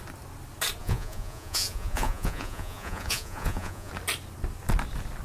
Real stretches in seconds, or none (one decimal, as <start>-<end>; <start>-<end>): 0.0-0.8; 3.9-5.2